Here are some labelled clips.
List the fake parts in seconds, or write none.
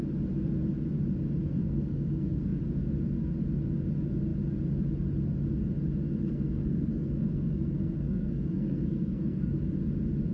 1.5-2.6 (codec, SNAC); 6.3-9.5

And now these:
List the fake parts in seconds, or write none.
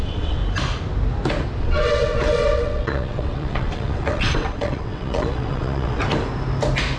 0.0-0.4 (vocoder, WaveNeXt); 1.6-6.0